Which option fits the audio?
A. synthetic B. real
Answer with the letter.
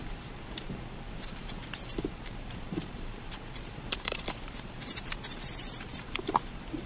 A